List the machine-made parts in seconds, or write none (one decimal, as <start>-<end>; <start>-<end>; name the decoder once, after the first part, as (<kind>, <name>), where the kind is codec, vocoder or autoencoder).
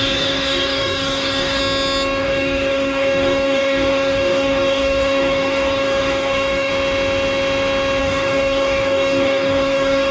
0.0-1.6 (codec, DAC); 2.2-6.7; 8.0-10.1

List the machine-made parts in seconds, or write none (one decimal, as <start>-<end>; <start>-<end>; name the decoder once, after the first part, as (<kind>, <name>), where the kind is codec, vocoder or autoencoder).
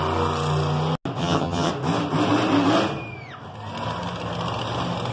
1.2-1.7 (vocoder, HiFi-GAN)